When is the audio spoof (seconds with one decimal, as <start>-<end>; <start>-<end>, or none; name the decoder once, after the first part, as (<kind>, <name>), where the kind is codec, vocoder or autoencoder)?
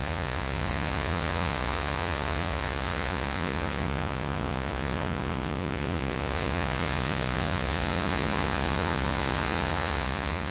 0.0-10.5 (vocoder, Vocos)